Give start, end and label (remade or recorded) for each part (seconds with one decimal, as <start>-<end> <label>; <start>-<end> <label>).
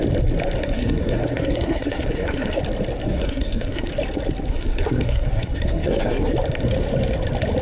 0.0-0.6 recorded; 0.6-2.6 remade; 2.6-3.0 recorded; 3.0-3.9 remade; 3.9-4.5 recorded; 4.5-6.3 remade; 6.3-7.6 recorded